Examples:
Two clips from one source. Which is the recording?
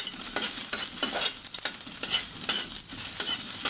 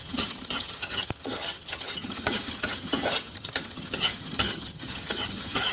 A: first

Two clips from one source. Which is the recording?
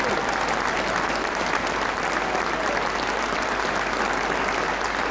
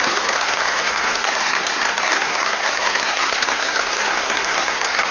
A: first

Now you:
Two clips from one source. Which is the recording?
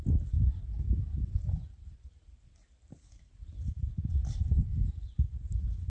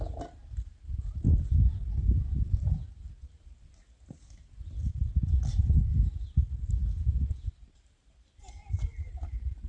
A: second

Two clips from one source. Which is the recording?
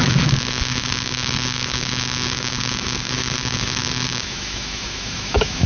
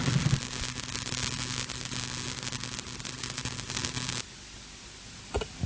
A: second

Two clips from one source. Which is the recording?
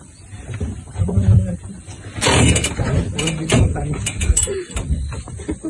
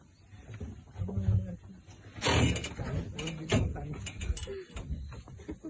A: second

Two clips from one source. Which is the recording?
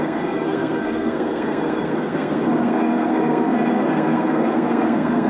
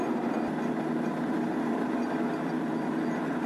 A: second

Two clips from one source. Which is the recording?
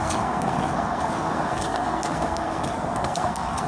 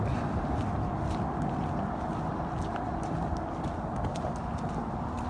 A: second